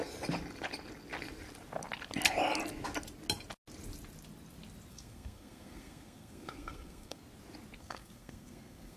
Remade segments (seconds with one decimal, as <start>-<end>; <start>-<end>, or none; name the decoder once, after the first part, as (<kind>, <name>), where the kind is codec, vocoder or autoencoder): 4.9-7.2 (codec, SNAC); 7.8-9.0